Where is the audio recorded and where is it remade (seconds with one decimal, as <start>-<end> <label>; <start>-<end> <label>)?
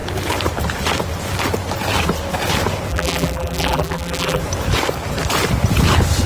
0.0-2.9 recorded; 2.9-4.4 remade; 4.4-6.3 recorded